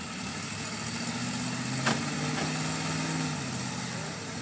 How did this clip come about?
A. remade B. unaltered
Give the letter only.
B